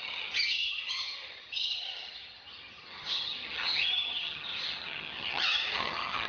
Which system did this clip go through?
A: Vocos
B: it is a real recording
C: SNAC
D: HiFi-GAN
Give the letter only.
D